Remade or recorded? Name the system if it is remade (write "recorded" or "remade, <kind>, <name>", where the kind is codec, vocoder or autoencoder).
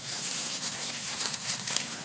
remade, codec, SNAC